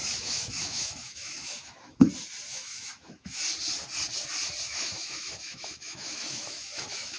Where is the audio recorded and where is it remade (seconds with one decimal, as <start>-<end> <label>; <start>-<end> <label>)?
0.0-2.1 remade; 2.1-2.5 recorded; 2.5-3.4 remade; 3.4-4.7 recorded; 4.7-7.2 remade